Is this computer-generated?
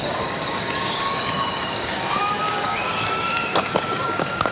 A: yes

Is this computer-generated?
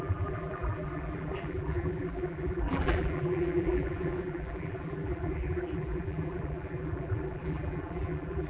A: yes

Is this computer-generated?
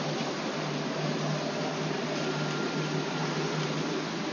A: no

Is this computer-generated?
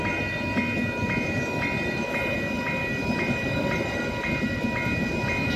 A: no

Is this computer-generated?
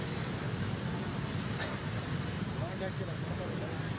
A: no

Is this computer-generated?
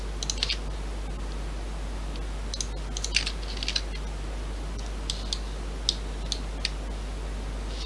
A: no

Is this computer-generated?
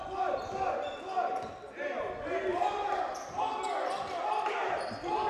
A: no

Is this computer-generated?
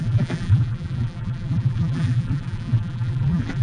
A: yes